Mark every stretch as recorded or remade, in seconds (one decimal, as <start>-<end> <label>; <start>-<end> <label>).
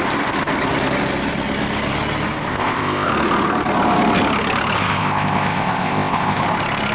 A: 0.0-2.5 recorded; 2.5-3.1 remade; 3.1-4.8 recorded; 4.8-6.4 remade; 6.4-6.9 recorded